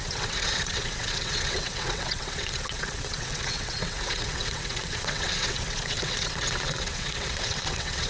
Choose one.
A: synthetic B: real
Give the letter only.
A